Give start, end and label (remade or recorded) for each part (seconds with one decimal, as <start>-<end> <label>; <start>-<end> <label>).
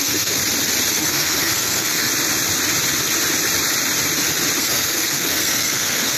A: 0.0-0.4 remade; 0.4-0.9 recorded; 0.9-2.1 remade; 2.1-4.6 recorded; 4.6-6.2 remade